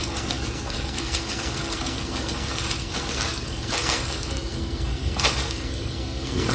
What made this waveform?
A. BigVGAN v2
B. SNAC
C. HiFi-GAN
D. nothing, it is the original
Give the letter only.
B